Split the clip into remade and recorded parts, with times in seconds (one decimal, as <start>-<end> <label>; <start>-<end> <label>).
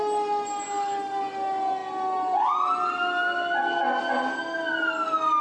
0.0-5.4 recorded